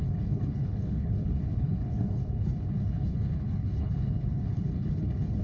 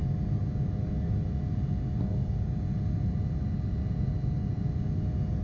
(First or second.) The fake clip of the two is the first